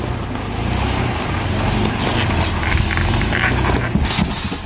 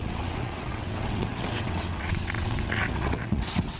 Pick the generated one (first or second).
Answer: second